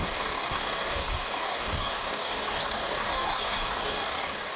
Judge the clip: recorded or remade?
remade